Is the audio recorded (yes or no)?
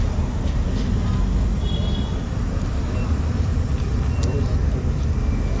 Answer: yes